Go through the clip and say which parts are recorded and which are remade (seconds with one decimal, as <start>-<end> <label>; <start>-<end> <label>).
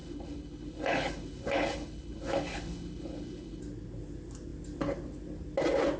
0.0-3.6 remade; 3.6-6.0 recorded